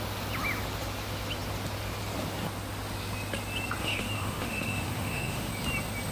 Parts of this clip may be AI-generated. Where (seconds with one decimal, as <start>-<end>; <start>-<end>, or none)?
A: 3.8-5.5